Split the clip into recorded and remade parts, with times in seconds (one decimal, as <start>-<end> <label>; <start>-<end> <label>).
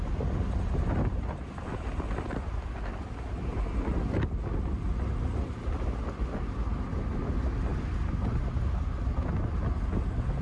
0.0-10.4 recorded